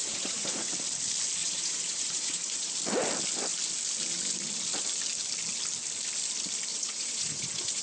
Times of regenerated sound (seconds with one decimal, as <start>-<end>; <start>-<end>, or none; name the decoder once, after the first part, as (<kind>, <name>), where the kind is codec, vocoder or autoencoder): 0.0-0.7 (vocoder, Vocos); 1.4-2.7; 6.7-7.8